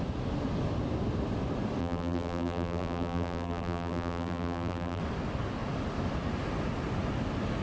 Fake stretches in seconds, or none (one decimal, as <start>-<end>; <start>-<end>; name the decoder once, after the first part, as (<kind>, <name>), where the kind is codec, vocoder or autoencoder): 1.8-5.0 (vocoder, BigVGAN v2)